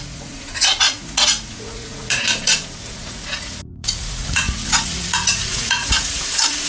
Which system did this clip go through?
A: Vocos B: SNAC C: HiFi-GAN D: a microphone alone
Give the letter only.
A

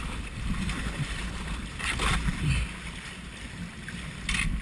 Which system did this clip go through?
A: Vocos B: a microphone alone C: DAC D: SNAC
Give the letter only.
B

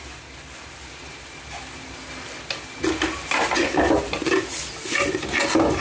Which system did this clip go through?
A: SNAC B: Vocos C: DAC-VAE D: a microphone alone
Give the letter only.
D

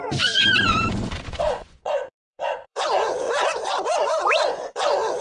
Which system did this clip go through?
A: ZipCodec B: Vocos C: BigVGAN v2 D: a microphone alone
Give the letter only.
B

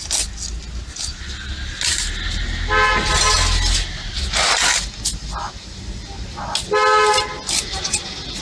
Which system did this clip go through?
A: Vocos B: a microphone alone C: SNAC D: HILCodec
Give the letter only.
B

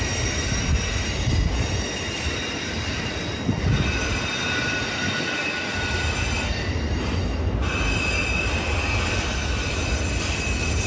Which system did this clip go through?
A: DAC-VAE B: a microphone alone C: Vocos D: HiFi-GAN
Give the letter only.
B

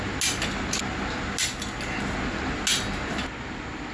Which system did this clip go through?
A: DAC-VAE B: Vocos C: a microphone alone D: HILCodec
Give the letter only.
C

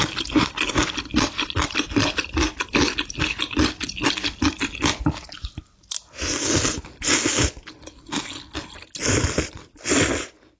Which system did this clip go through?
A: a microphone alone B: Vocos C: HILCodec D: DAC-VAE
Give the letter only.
A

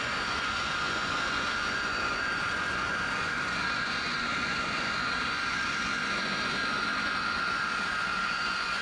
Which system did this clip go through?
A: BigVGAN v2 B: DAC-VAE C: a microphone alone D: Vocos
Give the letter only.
D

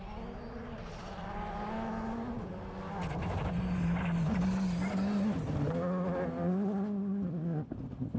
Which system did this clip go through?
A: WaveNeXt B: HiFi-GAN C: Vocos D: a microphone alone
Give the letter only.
D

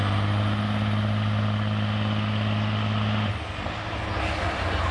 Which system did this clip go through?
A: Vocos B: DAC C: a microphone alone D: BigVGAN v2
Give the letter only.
C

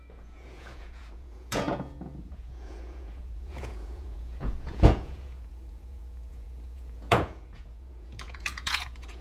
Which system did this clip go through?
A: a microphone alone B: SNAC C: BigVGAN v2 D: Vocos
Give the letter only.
D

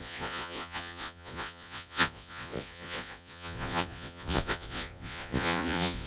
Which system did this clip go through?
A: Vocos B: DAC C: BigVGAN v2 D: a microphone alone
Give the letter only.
A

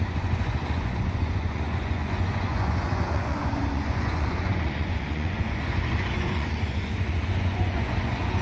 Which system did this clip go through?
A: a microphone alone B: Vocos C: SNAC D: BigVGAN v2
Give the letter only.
B